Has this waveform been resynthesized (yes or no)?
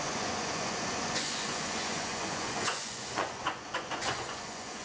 yes